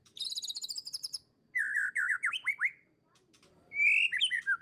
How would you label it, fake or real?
real